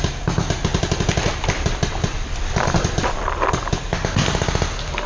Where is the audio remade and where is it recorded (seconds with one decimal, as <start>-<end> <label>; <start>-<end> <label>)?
0.0-5.1 recorded